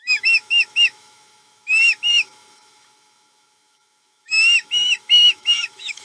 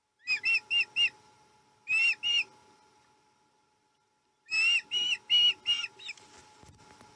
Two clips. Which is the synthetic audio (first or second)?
first